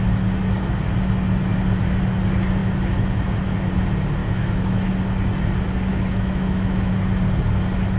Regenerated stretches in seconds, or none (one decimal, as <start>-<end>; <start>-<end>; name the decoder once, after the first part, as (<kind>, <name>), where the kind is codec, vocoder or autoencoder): 4.2-4.9 (autoencoder, DAC-VAE); 5.9-6.9